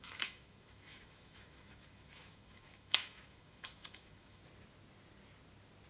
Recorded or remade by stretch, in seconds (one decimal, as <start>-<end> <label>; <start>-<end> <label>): 0.0-4.4 remade; 4.4-5.9 recorded